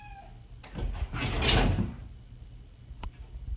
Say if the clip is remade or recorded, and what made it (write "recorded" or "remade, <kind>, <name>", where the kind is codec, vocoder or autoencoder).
recorded